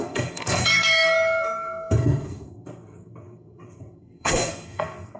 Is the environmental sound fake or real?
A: fake